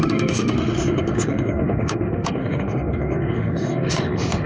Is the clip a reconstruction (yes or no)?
yes